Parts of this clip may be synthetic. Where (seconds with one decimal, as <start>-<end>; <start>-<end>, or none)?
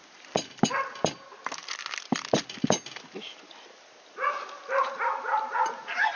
none